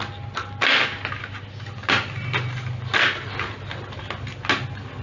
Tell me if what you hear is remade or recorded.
recorded